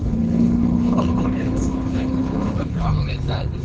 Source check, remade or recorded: remade